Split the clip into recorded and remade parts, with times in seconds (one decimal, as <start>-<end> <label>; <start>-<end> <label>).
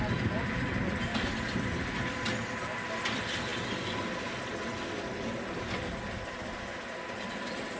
0.0-7.8 recorded